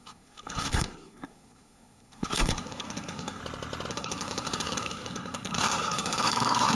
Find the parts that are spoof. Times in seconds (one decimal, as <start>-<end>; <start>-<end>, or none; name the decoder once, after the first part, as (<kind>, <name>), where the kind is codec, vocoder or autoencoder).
0.0-3.4 (codec, SNAC); 3.9-6.7